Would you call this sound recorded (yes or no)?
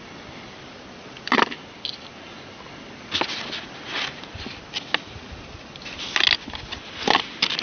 yes